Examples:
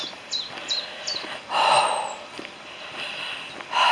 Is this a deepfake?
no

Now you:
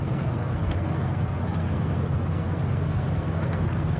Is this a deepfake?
yes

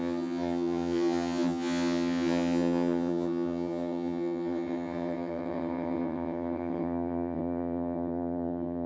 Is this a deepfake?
yes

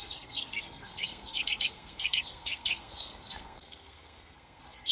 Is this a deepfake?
yes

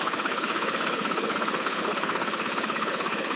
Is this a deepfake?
yes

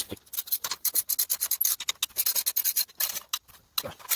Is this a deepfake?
no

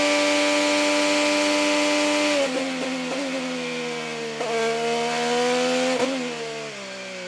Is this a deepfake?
no